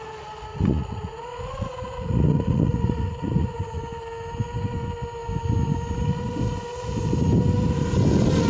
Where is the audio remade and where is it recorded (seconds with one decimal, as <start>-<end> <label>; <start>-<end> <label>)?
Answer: 0.0-0.5 recorded; 0.5-3.8 remade; 3.8-8.5 recorded